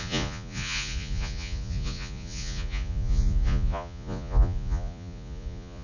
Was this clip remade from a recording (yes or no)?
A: yes